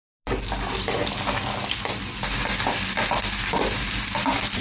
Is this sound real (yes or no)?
yes